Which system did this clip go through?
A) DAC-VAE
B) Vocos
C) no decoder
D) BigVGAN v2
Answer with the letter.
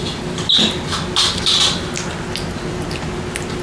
C